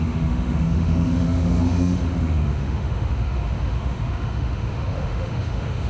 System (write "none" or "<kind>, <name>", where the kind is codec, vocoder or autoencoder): autoencoder, DAC-VAE